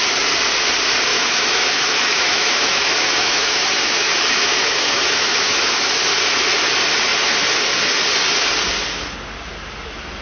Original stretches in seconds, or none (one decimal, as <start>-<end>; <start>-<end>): 0.0-1.1; 5.9-10.2